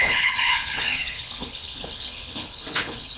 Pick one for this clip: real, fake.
fake